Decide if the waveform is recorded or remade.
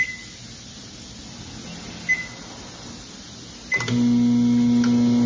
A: recorded